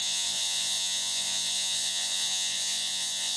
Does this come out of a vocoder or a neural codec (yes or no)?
yes